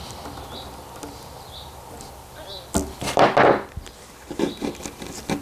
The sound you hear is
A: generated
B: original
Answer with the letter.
B